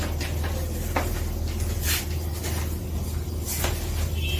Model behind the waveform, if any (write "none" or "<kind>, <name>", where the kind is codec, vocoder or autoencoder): none